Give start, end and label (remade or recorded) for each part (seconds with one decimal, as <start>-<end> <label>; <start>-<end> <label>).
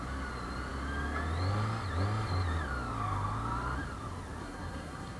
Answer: 0.0-4.4 recorded; 4.4-5.2 remade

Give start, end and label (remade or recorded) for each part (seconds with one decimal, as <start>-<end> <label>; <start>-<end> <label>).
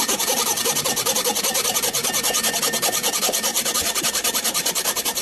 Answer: 0.0-2.0 remade; 2.0-2.6 recorded; 2.6-5.2 remade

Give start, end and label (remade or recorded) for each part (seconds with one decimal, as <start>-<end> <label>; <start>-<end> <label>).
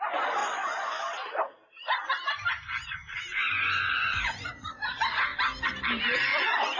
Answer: 0.0-0.4 recorded; 0.4-1.0 remade; 1.0-3.4 recorded; 3.4-4.5 remade; 4.5-6.8 recorded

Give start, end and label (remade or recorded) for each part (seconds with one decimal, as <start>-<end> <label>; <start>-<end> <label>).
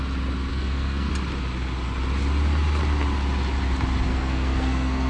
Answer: 0.0-0.5 recorded; 0.5-1.1 remade; 1.1-4.1 recorded; 4.1-5.1 remade